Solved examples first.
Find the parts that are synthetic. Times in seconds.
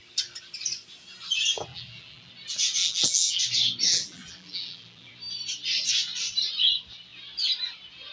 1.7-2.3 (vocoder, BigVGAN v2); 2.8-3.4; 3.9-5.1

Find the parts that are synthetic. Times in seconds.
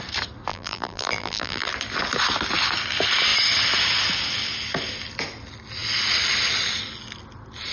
0.5-1.7 (vocoder, BigVGAN v2)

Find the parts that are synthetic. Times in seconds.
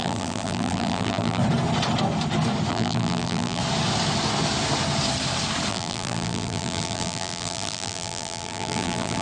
0.0-1.4 (vocoder, BigVGAN v2); 2.7-3.6; 5.7-9.2